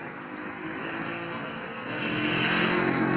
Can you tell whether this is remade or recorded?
remade